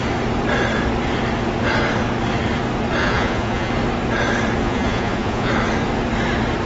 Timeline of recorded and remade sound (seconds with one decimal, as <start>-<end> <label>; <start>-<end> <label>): 0.0-3.0 recorded; 3.0-3.7 remade; 3.7-4.6 recorded; 4.6-5.5 remade; 5.5-6.7 recorded